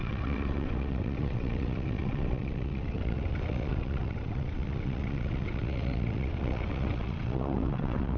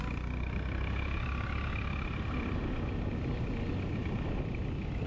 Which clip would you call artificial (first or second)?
first